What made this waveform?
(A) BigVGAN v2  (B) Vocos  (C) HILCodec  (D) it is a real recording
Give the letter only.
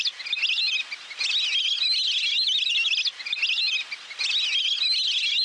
D